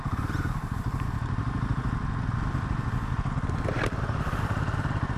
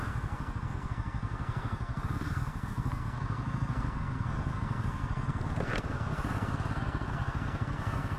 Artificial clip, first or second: second